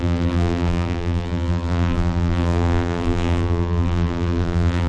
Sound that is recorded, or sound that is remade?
remade